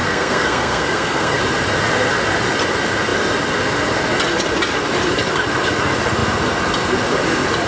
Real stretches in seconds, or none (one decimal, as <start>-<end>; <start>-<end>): 1.4-7.7